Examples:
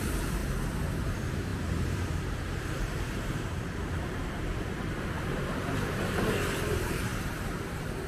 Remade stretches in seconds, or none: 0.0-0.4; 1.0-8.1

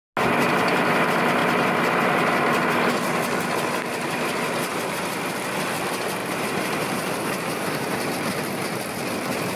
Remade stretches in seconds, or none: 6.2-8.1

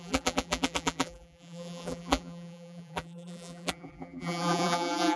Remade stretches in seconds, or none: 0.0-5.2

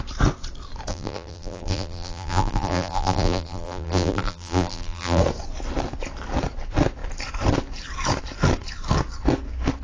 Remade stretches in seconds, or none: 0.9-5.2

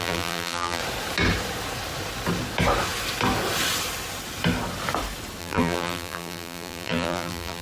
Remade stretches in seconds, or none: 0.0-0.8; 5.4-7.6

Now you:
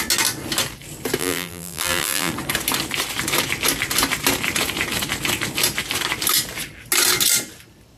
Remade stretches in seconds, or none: 1.2-2.3

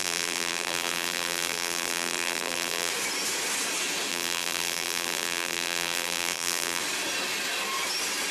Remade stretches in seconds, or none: 0.0-2.9; 4.1-6.8

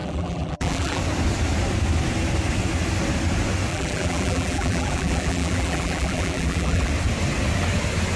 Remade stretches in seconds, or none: 0.0-1.0; 3.7-6.9